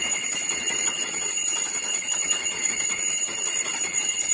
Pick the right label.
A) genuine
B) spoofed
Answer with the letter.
B